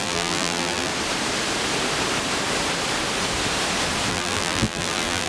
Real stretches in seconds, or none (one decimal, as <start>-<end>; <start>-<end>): 0.9-4.1